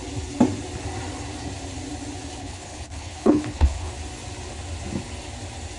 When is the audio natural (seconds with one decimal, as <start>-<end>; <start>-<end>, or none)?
0.0-2.4; 3.9-5.8